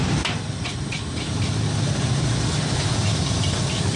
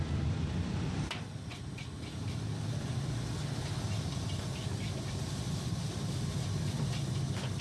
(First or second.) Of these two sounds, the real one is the second